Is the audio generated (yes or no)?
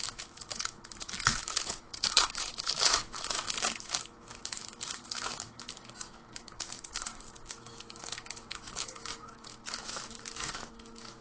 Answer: yes